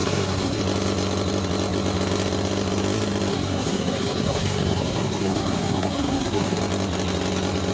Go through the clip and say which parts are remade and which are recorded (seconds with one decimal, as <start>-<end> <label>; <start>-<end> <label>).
0.0-0.6 remade; 0.6-3.3 recorded; 3.3-6.6 remade; 6.6-7.7 recorded